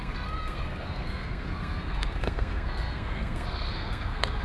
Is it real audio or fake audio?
fake